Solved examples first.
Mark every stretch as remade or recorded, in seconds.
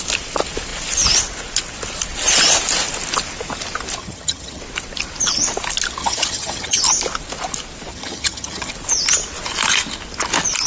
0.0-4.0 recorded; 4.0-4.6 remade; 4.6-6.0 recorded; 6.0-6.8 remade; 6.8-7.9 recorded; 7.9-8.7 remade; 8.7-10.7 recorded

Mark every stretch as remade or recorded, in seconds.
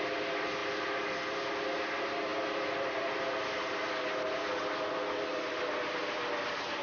0.0-6.8 recorded